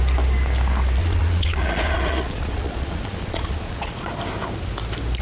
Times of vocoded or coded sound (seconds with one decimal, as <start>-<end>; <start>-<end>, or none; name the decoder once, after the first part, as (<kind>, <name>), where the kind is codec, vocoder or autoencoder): 1.0-4.1 (vocoder, Vocos)